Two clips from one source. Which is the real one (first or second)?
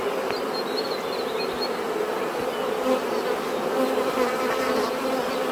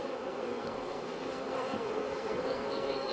first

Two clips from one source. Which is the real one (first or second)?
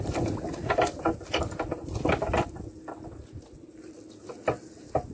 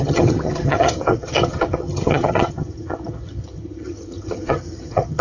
first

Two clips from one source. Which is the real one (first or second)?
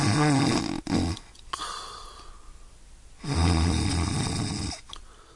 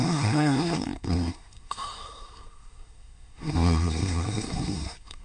first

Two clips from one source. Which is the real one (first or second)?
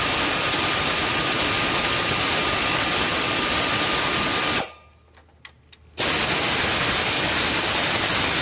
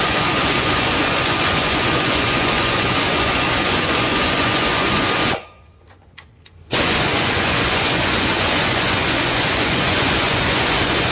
first